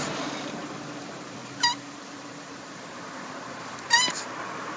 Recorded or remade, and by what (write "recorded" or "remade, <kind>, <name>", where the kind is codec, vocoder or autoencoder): remade, vocoder, BigVGAN v2